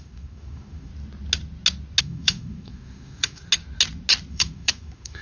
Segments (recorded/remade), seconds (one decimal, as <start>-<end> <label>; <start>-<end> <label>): 0.0-0.9 remade; 0.9-2.0 recorded; 2.0-3.4 remade; 3.4-4.3 recorded; 4.3-5.2 remade